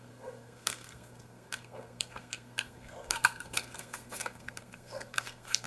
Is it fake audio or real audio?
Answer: fake